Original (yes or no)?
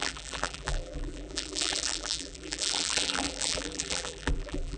no